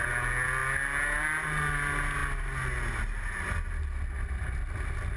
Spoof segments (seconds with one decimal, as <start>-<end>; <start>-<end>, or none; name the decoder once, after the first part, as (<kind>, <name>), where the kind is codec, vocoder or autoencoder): none